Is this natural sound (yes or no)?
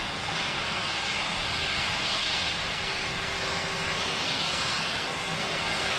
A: no